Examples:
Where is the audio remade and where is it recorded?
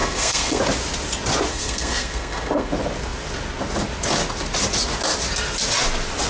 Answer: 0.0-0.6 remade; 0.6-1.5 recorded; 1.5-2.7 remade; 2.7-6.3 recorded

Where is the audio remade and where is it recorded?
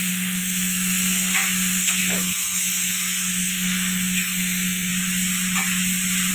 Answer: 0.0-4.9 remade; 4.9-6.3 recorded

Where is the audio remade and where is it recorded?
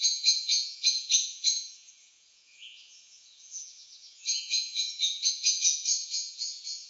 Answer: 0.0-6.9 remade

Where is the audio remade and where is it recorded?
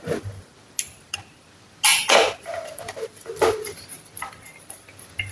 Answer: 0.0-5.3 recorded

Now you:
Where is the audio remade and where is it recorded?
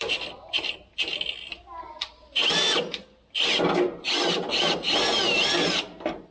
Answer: 0.0-6.3 recorded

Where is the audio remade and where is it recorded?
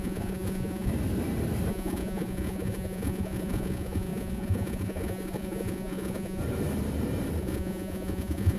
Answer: 0.0-0.9 remade; 0.9-1.7 recorded; 1.7-6.4 remade; 6.4-7.4 recorded; 7.4-8.6 remade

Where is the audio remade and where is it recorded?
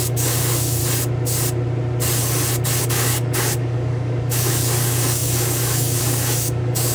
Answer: 0.0-0.8 remade; 0.8-2.8 recorded; 2.8-6.9 remade